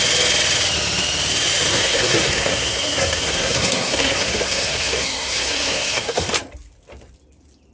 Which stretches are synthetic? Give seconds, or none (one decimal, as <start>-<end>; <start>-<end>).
1.7-6.3